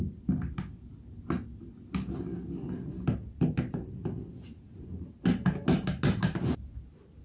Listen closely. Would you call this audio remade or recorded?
recorded